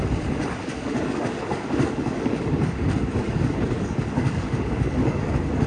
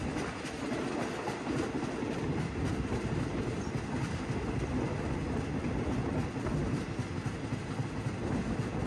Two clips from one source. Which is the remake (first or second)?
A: first